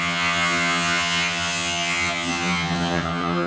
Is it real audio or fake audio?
fake